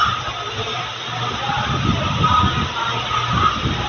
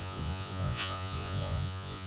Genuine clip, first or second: first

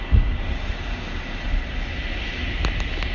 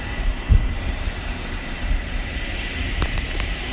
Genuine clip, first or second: first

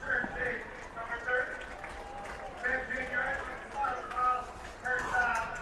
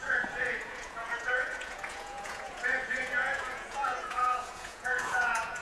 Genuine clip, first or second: first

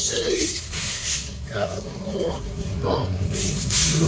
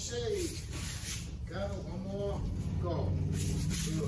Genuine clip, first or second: second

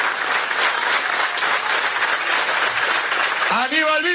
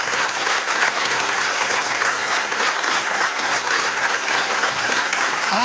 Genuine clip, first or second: first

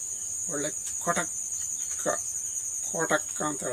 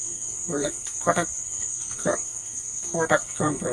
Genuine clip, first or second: first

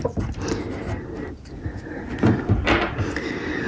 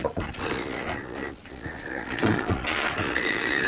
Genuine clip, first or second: first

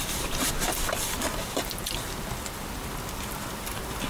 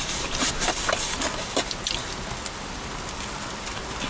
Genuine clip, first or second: second